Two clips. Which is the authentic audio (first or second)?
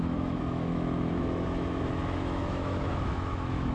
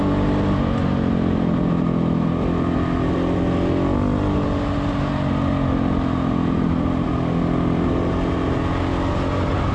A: second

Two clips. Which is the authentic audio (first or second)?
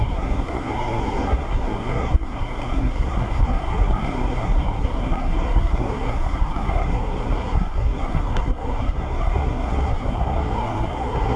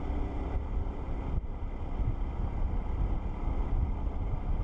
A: second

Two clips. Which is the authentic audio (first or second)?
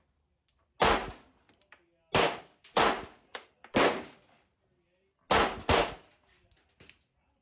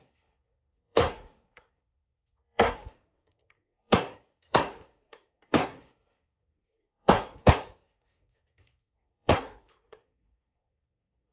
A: first